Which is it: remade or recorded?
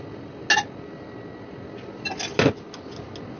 recorded